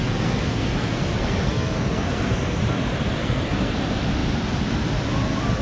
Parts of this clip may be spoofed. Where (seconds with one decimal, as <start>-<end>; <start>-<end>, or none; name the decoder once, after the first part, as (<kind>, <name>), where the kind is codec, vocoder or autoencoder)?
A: 0.0-2.6 (codec, SNAC); 3.2-3.8